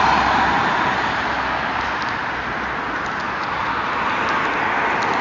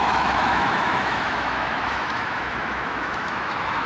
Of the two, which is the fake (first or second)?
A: second